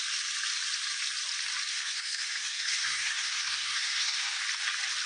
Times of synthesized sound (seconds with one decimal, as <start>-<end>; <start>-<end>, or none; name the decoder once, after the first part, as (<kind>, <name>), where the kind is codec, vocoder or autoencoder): 1.7-4.4 (codec, SNAC)